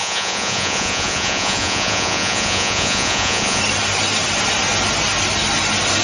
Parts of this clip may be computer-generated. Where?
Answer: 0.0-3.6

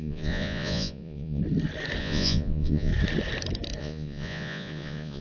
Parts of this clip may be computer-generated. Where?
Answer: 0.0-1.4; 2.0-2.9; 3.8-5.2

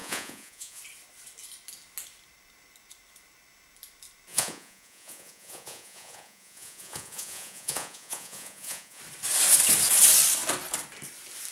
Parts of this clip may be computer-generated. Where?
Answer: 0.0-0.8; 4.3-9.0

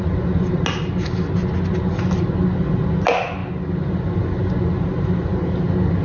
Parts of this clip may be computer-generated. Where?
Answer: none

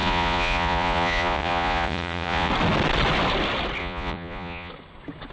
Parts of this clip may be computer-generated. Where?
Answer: 0.0-2.5; 3.8-4.7

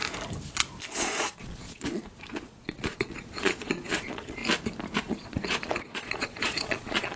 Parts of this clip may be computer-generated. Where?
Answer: 1.0-4.4; 5.0-7.2